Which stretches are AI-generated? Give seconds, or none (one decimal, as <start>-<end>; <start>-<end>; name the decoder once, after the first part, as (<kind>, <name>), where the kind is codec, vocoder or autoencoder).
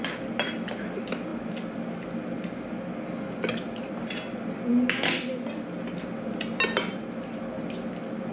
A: none